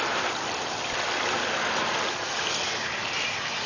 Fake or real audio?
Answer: real